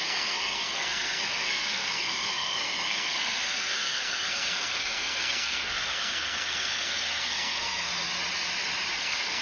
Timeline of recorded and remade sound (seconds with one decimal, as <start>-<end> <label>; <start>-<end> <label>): 0.0-7.9 remade; 7.9-8.9 recorded; 8.9-9.4 remade